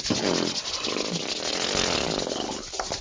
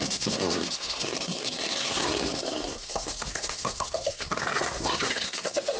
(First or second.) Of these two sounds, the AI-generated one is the second